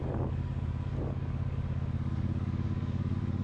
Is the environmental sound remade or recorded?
remade